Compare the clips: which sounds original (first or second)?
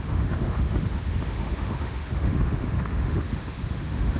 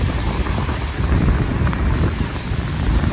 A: second